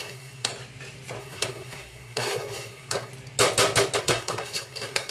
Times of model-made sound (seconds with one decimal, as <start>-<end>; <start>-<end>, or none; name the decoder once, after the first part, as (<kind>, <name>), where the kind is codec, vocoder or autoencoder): 0.0-0.5 (codec, SNAC); 1.2-3.1; 4.0-5.1

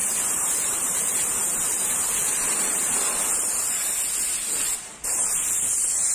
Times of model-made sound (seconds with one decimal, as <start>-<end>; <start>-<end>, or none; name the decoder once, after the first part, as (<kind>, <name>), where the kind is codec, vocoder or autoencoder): 0.0-2.8 (vocoder, BigVGAN v2)

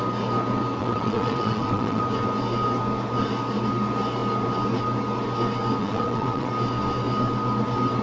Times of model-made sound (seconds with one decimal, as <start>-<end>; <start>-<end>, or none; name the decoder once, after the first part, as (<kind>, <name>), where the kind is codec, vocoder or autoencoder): 0.8-2.0 (vocoder, WaveNeXt); 5.8-6.5